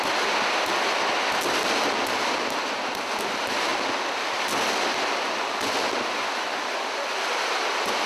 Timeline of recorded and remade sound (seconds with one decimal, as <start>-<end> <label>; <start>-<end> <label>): 0.0-8.1 recorded